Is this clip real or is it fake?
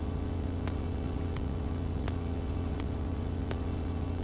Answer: fake